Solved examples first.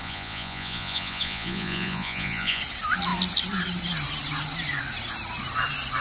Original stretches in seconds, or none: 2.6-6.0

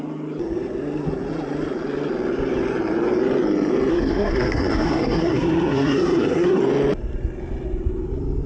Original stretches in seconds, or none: 0.0-3.9; 6.6-8.5

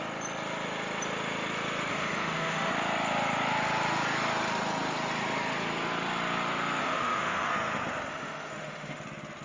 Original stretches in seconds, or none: 0.0-1.9; 2.7-6.8; 7.5-8.1; 9.0-9.4